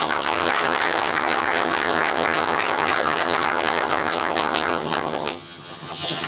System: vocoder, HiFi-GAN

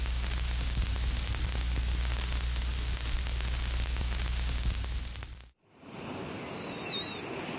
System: none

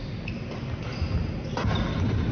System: none